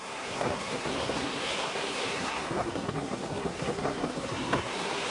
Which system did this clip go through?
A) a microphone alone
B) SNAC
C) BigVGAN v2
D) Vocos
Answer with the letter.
B